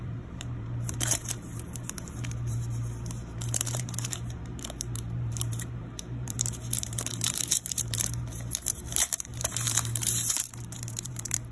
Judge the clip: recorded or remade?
remade